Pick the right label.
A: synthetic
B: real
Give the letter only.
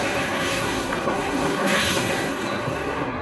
A